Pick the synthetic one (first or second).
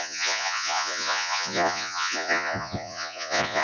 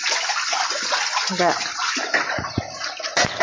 first